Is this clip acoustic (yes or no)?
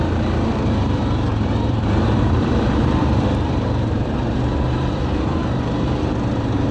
no